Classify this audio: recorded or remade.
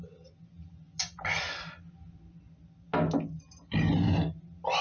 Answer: recorded